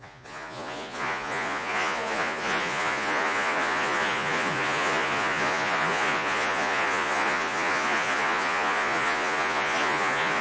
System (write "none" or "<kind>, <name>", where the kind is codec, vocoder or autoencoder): vocoder, Vocos